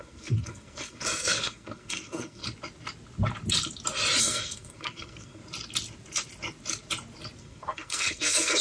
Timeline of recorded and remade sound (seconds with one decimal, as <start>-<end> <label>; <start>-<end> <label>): 0.0-2.4 remade; 2.4-4.2 recorded; 4.2-5.4 remade; 5.4-7.4 recorded; 7.4-8.6 remade

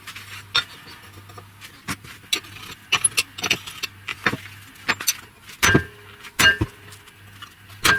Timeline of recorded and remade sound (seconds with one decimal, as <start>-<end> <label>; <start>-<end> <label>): 0.0-8.0 recorded

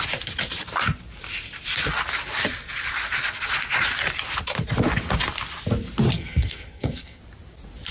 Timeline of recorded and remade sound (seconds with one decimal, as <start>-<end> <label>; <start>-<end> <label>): 0.0-6.1 recorded; 6.1-7.2 remade; 7.2-7.9 recorded

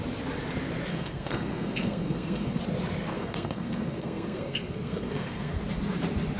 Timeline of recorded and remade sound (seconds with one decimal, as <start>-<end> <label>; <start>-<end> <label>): 0.0-0.9 recorded; 0.9-2.6 remade; 2.6-3.1 recorded; 3.1-5.6 remade; 5.6-6.4 recorded

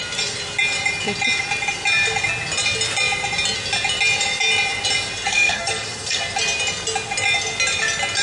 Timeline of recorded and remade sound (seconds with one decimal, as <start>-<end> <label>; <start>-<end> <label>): 0.0-5.3 recorded; 5.3-6.2 remade; 6.2-8.2 recorded

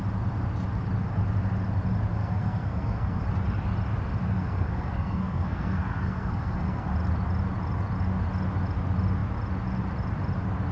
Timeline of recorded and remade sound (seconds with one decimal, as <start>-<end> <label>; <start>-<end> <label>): 0.0-2.1 recorded; 2.1-3.2 remade; 3.2-4.4 recorded; 4.4-6.9 remade; 6.9-10.7 recorded

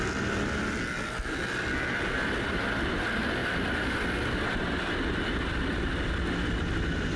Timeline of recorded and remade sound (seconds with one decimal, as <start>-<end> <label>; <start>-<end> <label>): 0.0-7.2 recorded

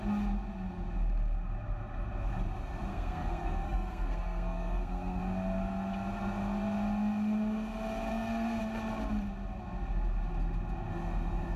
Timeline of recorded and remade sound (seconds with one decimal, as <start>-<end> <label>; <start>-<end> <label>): 0.0-2.9 recorded; 2.9-5.2 remade; 5.2-8.1 recorded; 8.1-8.6 remade; 8.6-11.6 recorded